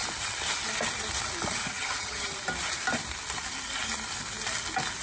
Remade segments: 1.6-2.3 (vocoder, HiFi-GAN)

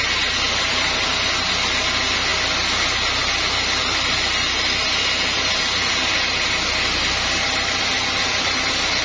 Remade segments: none